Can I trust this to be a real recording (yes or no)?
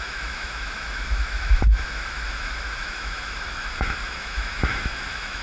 no